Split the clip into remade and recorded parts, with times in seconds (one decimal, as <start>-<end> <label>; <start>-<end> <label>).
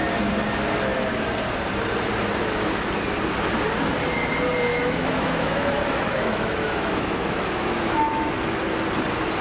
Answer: 0.0-4.7 recorded; 4.7-8.3 remade; 8.3-9.4 recorded